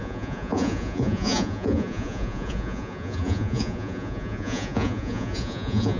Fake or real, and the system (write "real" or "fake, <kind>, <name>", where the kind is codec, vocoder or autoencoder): fake, vocoder, Vocos